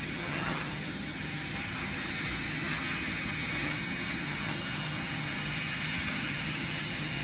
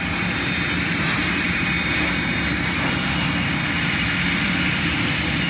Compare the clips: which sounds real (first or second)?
second